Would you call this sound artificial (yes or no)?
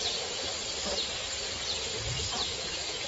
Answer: no